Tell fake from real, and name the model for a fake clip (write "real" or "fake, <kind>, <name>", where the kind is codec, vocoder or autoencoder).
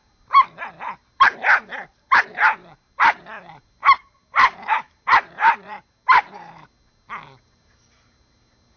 fake, vocoder, BigVGAN v2